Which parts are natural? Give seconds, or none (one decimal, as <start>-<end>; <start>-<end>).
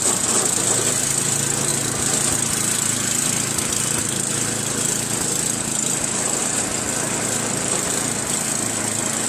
0.0-9.3